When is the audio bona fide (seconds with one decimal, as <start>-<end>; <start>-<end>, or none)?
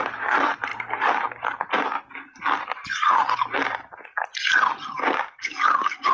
0.0-6.1